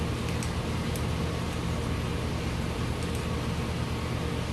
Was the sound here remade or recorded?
recorded